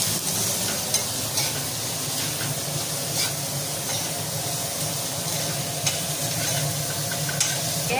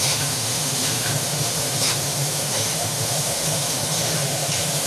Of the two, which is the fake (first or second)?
second